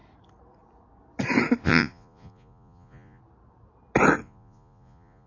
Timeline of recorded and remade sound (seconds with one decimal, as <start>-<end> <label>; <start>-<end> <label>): 0.0-1.6 recorded; 1.6-3.2 remade; 3.2-4.2 recorded; 4.2-5.3 remade